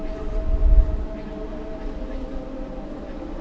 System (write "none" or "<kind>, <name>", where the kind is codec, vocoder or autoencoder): none